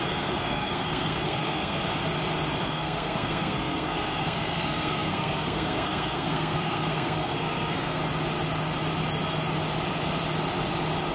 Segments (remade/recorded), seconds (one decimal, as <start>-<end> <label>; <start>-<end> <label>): 0.0-1.8 remade; 1.8-2.6 recorded; 2.6-8.0 remade; 8.0-11.1 recorded